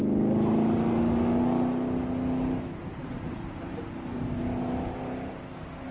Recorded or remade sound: recorded